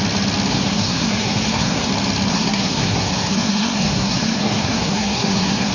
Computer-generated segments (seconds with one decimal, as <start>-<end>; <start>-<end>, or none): 0.5-1.9; 2.3-5.7